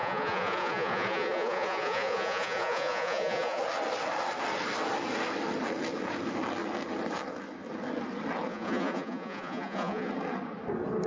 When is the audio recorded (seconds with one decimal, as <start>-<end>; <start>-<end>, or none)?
3.6-8.5; 10.1-11.1